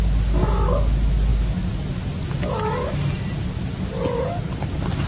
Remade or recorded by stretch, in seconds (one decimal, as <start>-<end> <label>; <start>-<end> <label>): 0.0-5.1 recorded